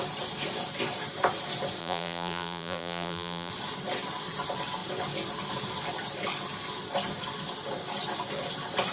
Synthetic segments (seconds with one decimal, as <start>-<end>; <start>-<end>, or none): 1.8-3.5